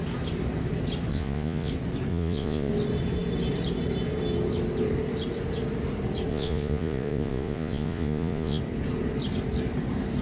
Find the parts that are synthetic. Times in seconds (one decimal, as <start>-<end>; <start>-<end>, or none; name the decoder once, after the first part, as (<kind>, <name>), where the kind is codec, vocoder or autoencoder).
1.1-1.7 (vocoder, Vocos); 2.1-2.7; 6.3-8.6

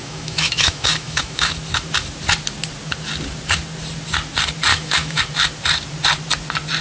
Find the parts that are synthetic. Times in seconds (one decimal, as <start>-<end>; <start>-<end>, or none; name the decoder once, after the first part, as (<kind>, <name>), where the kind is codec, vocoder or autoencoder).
0.0-1.5 (autoencoder, DAC-VAE); 4.7-5.2

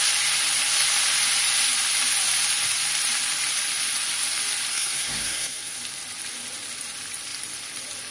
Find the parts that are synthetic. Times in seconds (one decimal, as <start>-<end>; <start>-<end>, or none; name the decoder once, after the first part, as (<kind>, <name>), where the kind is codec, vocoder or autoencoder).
4.7-5.8 (codec, SNAC)

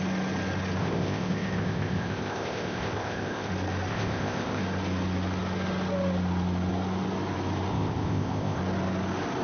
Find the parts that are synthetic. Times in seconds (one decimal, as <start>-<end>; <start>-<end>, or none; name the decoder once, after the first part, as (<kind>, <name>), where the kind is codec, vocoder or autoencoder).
0.8-3.5 (codec, ZipCodec); 3.9-4.6; 7.7-8.6

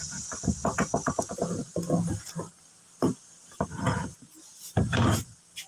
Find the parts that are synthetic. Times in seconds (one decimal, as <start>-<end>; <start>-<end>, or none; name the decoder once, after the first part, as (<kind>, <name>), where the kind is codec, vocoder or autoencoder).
0.6-1.2 (vocoder, BigVGAN v2)